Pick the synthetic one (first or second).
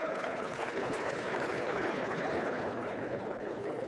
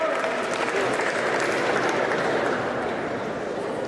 first